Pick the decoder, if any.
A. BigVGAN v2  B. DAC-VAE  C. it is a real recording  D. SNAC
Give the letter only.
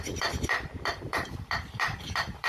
A